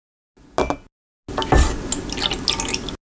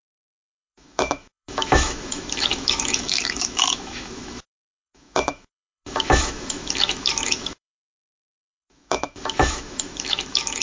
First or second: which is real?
first